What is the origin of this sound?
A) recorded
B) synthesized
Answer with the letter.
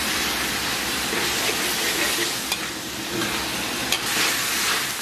A